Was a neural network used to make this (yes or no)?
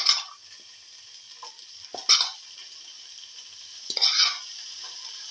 no